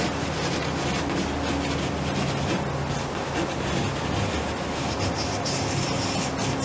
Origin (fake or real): real